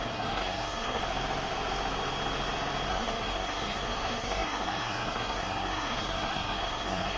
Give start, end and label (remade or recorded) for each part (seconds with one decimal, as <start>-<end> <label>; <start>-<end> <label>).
0.0-1.0 remade; 1.0-2.9 recorded; 2.9-7.2 remade